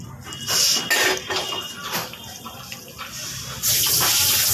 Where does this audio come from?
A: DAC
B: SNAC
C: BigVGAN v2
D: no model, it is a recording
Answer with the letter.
D